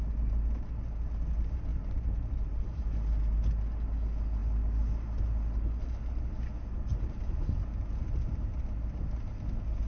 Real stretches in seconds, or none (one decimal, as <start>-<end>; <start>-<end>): 0.0-1.7; 2.8-6.9; 8.5-9.9